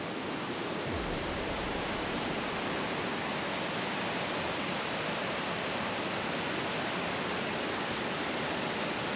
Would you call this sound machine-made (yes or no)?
no